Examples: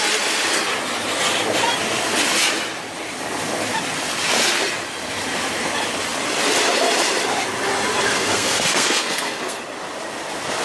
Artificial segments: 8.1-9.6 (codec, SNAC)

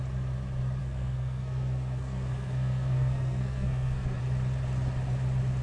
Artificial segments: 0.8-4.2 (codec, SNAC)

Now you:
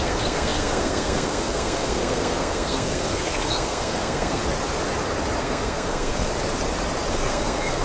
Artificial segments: 0.0-4.4 (codec, SNAC); 5.4-6.3; 7.1-7.8